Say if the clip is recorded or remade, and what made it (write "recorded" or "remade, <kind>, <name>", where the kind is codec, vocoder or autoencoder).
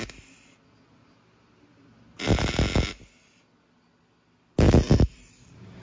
recorded